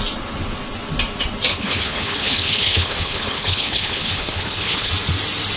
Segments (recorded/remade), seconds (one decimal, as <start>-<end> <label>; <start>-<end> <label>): 0.0-1.5 recorded; 1.5-4.9 remade; 4.9-5.6 recorded